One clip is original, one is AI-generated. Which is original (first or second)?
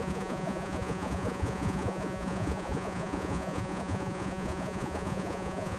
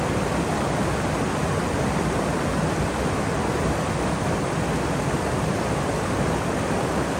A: second